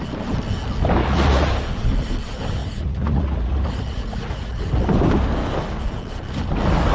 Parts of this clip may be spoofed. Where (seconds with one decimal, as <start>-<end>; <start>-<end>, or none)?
1.0-1.5; 2.6-4.7